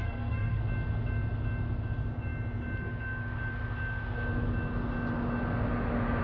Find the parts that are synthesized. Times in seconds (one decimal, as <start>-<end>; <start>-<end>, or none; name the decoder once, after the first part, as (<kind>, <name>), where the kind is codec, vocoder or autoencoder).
0.0-0.6 (codec, SNAC)